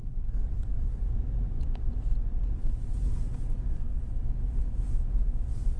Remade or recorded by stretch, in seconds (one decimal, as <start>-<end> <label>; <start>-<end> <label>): 0.0-0.8 remade; 0.8-5.8 recorded